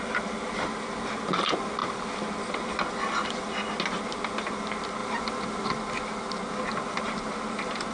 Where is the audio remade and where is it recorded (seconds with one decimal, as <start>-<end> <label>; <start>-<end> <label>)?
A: 0.0-7.9 recorded